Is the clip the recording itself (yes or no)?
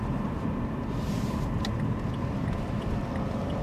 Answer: yes